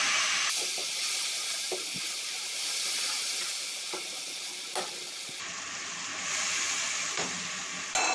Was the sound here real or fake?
real